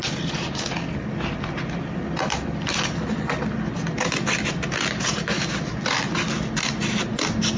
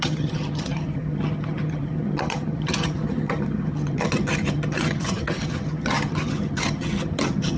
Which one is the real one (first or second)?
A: first